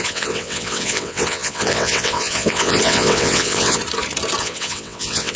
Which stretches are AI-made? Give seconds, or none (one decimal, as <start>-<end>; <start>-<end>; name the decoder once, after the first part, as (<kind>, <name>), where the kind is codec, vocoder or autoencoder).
0.0-3.8 (vocoder, WaveNeXt); 4.4-5.4